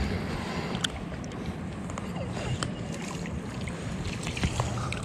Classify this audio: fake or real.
fake